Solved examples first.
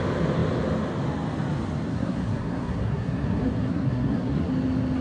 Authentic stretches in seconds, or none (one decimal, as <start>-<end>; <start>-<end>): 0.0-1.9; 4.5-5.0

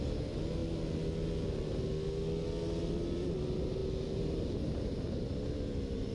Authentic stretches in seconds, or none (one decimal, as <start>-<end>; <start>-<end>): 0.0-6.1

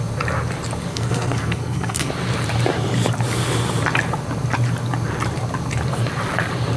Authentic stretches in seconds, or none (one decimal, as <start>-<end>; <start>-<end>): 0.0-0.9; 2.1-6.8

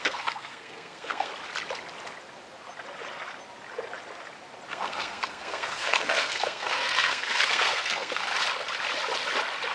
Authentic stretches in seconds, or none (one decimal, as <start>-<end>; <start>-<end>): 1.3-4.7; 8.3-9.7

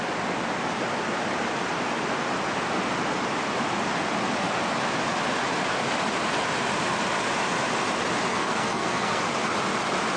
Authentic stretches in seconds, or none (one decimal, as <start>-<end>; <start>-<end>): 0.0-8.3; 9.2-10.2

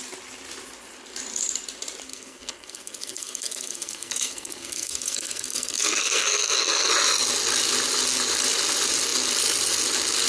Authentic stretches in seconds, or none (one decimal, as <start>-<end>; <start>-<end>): 0.0-2.1; 6.9-10.3